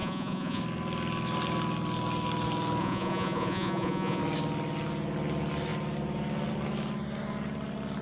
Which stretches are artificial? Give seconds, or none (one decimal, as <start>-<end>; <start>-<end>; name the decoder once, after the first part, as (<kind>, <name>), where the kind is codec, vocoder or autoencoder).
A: 0.0-0.6 (vocoder, Vocos); 2.8-4.2